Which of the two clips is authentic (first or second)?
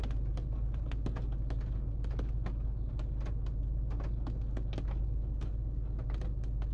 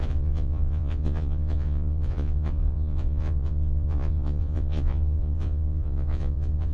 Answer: first